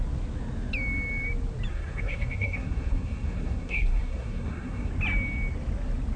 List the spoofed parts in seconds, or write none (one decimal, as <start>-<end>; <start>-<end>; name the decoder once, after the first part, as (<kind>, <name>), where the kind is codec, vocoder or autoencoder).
1.7-4.9 (codec, SNAC)